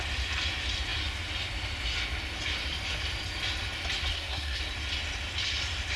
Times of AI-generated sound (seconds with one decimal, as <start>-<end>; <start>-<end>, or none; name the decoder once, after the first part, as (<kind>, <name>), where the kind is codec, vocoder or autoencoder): 4.1-4.6 (codec, SNAC)